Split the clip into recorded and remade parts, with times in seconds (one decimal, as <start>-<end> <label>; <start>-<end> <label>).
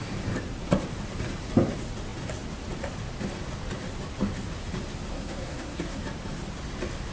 0.0-5.1 recorded; 5.1-6.0 remade; 6.0-7.1 recorded